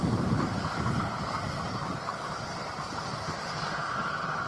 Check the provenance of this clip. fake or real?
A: real